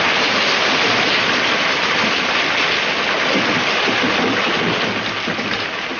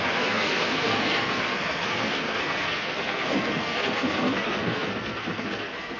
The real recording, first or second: first